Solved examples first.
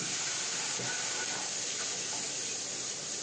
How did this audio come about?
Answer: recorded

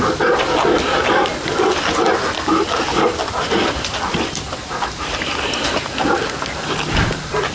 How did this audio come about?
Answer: recorded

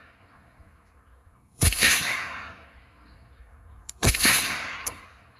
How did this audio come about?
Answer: remade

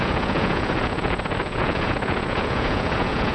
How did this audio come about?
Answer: remade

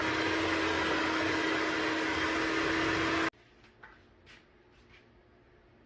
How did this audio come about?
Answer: recorded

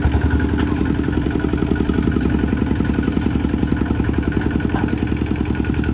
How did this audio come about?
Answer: recorded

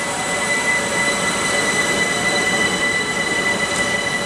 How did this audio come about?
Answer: remade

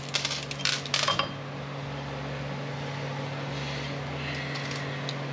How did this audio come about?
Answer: recorded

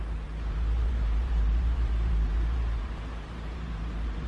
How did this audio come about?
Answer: remade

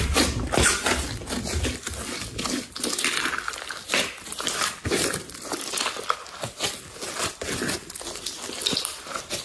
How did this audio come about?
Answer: recorded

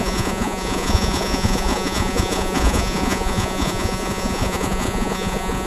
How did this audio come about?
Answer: remade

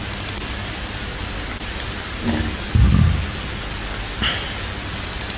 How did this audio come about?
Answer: recorded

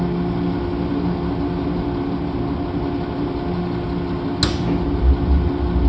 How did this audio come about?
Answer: recorded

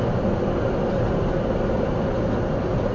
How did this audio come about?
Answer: recorded